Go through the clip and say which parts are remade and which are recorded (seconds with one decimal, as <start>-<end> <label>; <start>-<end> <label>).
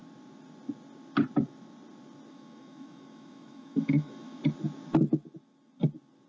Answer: 0.0-2.3 recorded; 2.3-4.4 remade; 4.4-6.3 recorded